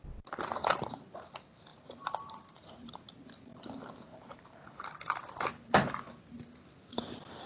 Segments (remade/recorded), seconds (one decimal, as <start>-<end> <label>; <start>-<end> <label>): 0.0-0.6 recorded; 0.6-1.1 remade; 1.1-1.7 recorded; 1.7-3.0 remade; 3.0-4.1 recorded; 4.1-5.7 remade; 5.7-7.5 recorded